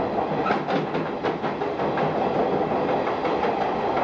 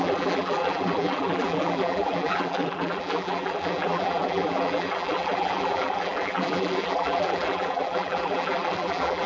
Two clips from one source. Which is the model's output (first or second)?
second